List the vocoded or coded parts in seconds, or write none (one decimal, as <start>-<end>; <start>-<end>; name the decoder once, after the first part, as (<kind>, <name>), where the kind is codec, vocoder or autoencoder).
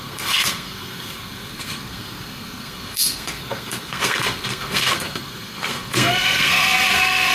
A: 0.0-7.3 (codec, SNAC)